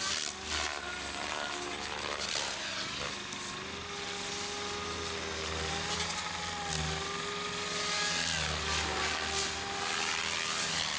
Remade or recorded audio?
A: recorded